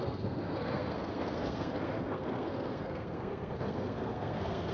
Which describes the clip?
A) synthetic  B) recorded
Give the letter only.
A